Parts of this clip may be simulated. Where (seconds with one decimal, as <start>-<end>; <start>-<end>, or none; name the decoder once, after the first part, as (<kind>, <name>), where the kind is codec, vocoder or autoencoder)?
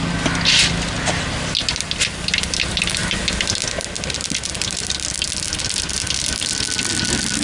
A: none